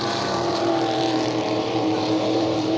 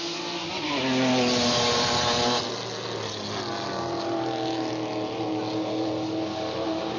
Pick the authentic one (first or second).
second